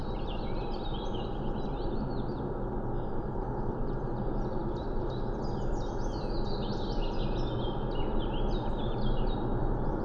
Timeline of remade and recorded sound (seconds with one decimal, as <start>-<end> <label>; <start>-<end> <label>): 0.0-1.3 remade; 1.3-9.5 recorded; 9.5-10.0 remade